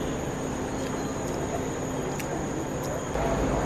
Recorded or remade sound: recorded